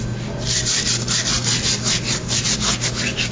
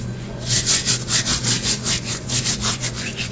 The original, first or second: first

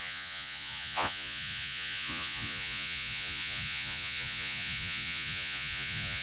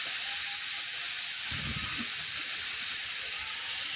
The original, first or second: second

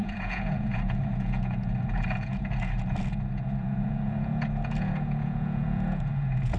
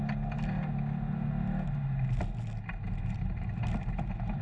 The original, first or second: second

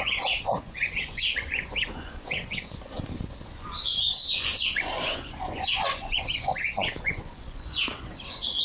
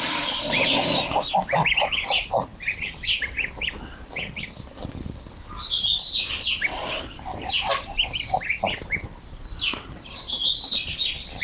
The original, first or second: second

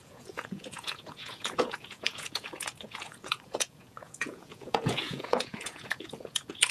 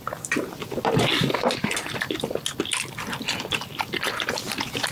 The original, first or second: second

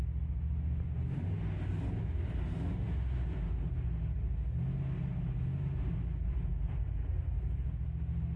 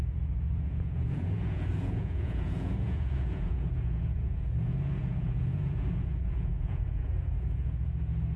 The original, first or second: first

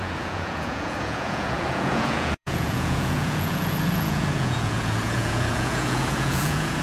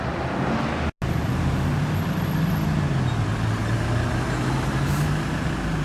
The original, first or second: second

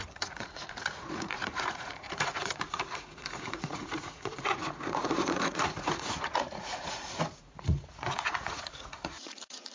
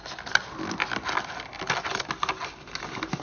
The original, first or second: second